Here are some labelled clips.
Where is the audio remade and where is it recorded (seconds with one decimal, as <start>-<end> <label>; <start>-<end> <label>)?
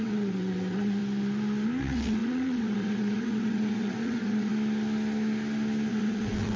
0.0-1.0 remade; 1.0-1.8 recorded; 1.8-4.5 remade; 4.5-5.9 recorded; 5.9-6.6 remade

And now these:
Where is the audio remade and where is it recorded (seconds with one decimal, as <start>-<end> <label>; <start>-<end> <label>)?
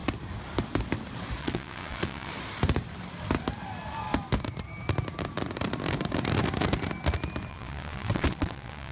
0.0-1.4 recorded; 1.4-2.3 remade; 2.3-7.5 recorded; 7.5-8.9 remade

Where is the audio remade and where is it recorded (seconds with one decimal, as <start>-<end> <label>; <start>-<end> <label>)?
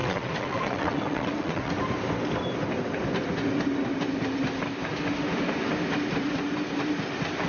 0.0-1.7 remade; 1.7-7.5 recorded